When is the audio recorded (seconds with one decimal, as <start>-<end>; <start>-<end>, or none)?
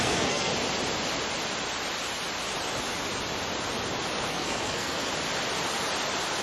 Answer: 0.5-4.3; 5.1-6.4